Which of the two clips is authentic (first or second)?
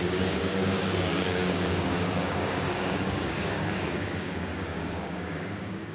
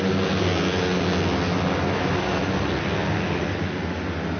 second